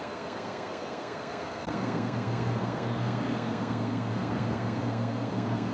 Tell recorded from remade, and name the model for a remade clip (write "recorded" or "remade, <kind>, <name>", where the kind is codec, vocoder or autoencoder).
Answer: remade, codec, SNAC